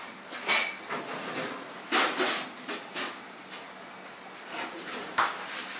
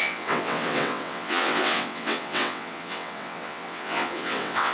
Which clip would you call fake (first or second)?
second